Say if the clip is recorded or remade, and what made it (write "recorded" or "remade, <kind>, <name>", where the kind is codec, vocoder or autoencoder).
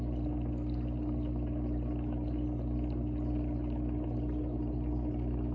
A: recorded